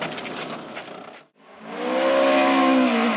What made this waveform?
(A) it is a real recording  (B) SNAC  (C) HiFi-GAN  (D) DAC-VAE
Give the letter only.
A